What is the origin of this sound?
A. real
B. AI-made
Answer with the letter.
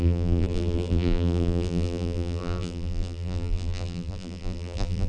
B